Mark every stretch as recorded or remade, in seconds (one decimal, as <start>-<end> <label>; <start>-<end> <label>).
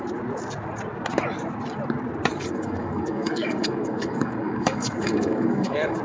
0.0-2.3 recorded; 2.3-6.0 remade